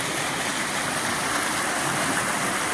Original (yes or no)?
yes